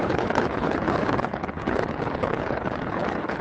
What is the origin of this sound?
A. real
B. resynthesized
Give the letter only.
B